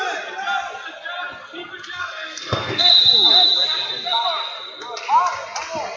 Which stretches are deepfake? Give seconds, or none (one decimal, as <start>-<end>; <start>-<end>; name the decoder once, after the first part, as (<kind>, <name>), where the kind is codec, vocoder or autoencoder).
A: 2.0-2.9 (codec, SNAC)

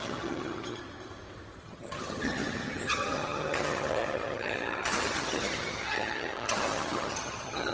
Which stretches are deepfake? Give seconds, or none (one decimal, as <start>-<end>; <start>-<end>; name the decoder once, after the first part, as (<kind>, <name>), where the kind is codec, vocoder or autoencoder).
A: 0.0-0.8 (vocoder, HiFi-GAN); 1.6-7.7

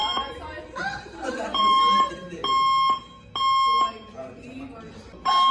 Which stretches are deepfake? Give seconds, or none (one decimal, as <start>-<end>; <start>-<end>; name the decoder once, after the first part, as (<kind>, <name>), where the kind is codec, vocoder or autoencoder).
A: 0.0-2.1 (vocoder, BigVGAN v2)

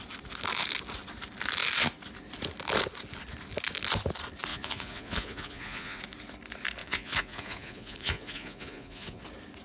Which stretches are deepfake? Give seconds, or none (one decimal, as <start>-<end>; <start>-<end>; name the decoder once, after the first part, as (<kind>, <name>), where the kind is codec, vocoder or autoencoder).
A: 4.5-6.0 (vocoder, Vocos); 6.8-9.2